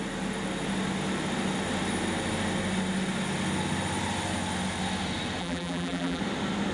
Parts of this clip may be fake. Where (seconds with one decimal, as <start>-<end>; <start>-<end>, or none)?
5.4-6.2